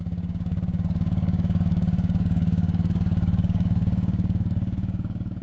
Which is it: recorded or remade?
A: remade